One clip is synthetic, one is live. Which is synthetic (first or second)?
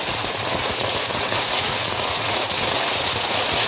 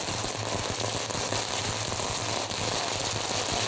first